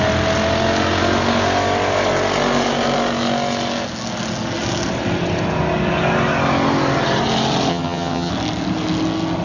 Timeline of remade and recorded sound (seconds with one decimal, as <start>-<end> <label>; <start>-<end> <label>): 0.0-7.7 recorded; 7.7-8.3 remade; 8.3-9.4 recorded